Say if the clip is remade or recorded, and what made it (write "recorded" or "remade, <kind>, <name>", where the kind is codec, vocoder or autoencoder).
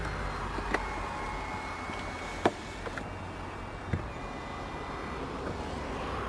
recorded